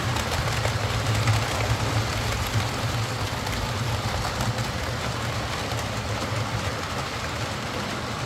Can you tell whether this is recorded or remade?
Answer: remade